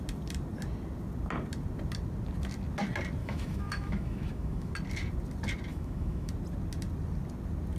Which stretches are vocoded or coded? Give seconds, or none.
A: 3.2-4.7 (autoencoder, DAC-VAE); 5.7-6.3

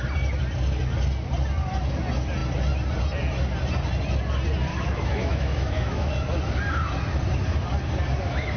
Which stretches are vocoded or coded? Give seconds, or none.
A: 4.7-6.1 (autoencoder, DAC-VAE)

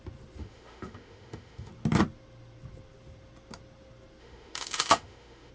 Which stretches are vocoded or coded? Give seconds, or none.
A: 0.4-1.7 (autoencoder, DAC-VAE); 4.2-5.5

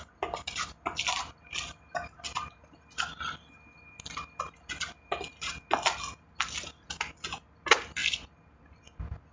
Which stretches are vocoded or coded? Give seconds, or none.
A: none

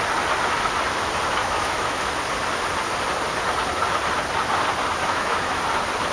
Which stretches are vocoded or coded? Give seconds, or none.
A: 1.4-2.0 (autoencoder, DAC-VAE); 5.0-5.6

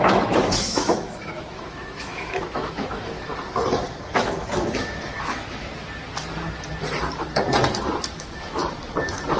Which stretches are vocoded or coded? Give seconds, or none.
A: 0.0-3.3 (autoencoder, DAC-VAE); 4.1-5.7; 8.1-8.6

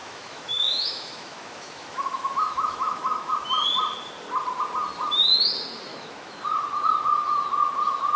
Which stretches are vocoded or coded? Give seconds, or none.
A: 0.0-3.3 (autoencoder, DAC-VAE); 5.9-6.4

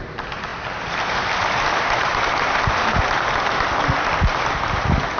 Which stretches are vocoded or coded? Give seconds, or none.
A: none